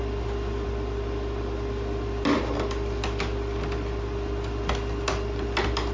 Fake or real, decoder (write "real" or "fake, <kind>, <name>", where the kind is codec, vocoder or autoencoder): real